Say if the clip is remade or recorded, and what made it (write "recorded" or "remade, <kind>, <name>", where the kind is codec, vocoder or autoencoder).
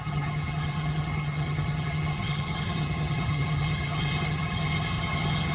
remade, vocoder, HiFi-GAN